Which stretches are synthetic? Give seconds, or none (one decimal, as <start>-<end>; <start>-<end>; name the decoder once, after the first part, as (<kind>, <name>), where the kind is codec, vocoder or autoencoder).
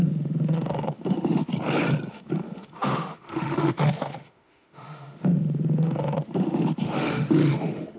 0.0-1.5 (autoencoder, DAC-VAE); 2.1-8.0